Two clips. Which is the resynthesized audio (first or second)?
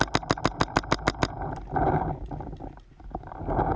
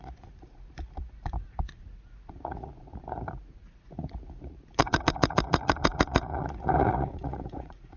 second